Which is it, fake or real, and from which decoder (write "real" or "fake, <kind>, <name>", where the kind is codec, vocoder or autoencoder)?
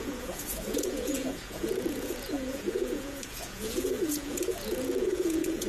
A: fake, vocoder, Vocos